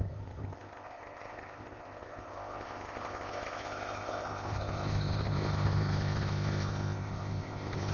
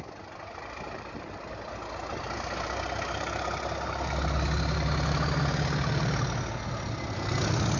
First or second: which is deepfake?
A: first